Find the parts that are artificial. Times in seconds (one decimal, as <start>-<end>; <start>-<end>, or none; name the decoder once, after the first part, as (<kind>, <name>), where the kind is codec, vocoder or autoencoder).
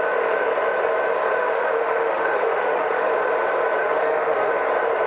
1.3-3.1 (autoencoder, DAC-VAE); 3.8-4.5